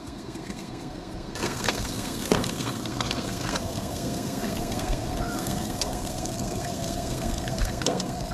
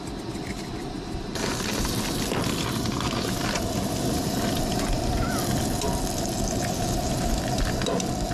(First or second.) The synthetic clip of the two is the first